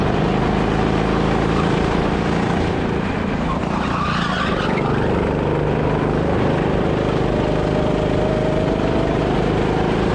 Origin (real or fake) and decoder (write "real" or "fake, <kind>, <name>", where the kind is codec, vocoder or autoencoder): real